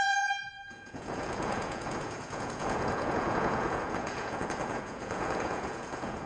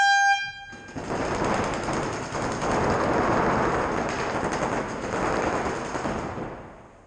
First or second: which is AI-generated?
first